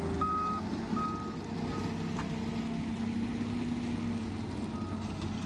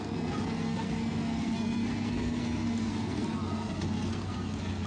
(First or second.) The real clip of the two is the first